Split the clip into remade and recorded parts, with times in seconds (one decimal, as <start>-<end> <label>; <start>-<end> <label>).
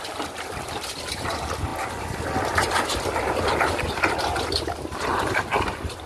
0.0-6.1 recorded